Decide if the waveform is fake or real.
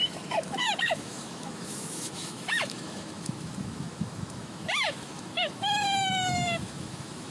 fake